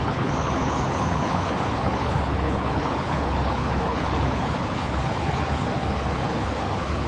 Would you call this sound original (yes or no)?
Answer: no